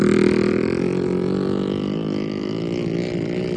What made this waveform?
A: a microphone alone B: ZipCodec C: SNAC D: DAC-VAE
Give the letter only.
A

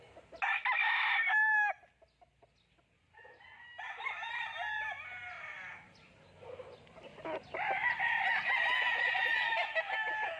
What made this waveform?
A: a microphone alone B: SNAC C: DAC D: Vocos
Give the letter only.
A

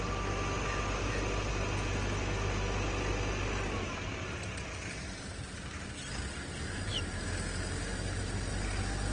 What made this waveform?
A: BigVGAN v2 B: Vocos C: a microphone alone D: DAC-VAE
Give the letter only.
C